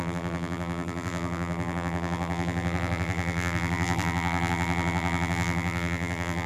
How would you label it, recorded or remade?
remade